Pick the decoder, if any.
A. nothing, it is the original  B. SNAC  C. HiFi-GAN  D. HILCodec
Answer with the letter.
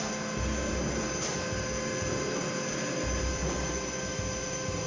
A